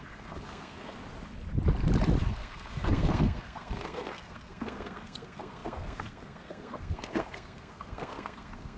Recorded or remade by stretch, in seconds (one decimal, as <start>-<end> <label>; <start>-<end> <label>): 0.0-1.0 remade; 1.0-2.2 recorded; 2.2-8.8 remade